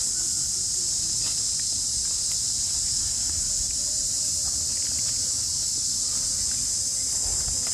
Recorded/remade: recorded